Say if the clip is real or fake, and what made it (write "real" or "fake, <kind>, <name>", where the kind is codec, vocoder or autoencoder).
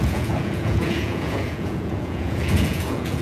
fake, vocoder, Vocos